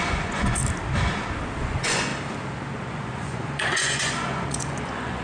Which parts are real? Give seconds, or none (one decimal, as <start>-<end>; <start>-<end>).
0.6-1.6; 2.1-2.9